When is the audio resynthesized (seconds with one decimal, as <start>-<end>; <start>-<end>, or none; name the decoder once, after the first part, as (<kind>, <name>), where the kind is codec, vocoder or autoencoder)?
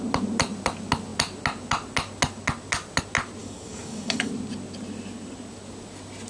3.4-4.3 (codec, DAC)